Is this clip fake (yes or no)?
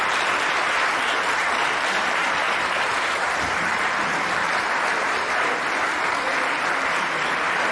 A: yes